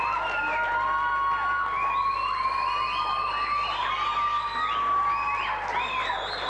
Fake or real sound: real